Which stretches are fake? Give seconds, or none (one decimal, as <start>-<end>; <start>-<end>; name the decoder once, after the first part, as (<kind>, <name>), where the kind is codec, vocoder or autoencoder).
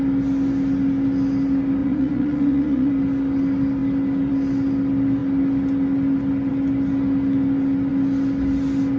1.8-2.9 (vocoder, Vocos)